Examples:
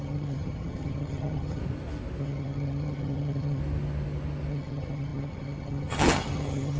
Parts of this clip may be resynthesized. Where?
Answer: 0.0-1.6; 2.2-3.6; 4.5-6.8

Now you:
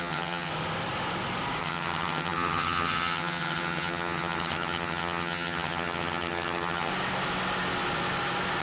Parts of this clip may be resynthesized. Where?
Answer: 0.0-0.5; 1.6-6.9

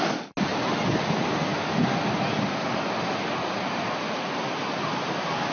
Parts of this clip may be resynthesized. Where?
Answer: none

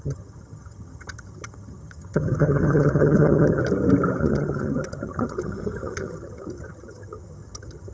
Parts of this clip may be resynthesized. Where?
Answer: 0.0-3.6; 4.2-7.9

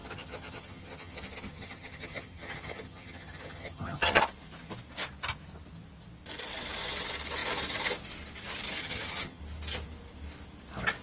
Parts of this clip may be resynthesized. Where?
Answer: 0.0-4.2; 8.8-9.4